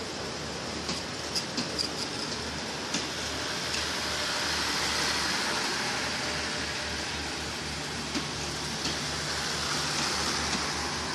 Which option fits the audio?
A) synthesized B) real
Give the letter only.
B